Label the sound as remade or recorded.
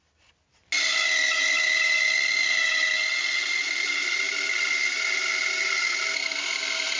recorded